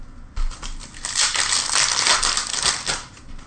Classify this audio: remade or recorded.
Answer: recorded